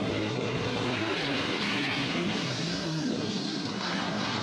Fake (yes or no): yes